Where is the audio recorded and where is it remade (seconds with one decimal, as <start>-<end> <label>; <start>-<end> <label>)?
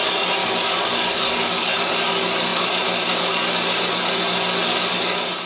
0.0-0.4 recorded; 0.4-1.9 remade; 1.9-5.5 recorded